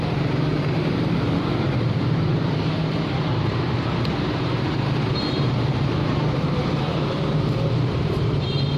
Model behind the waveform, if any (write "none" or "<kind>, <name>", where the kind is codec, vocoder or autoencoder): vocoder, BigVGAN v2